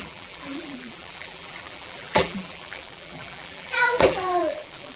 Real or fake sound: fake